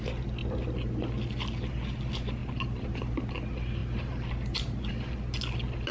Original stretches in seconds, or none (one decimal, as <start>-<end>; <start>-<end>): 0.0-5.9